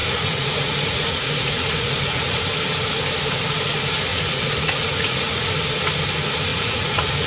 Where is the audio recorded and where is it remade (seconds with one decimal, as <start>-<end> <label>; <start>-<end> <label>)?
0.0-2.4 remade; 2.4-4.1 recorded; 4.1-5.5 remade; 5.5-6.5 recorded; 6.5-7.3 remade